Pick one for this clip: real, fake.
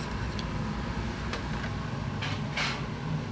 real